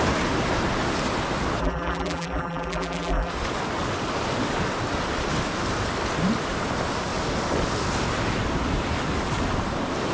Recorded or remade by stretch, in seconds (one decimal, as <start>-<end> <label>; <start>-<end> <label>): 0.0-1.6 recorded; 1.6-3.3 remade; 3.3-10.1 recorded